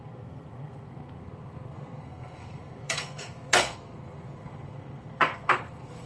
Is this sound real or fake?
fake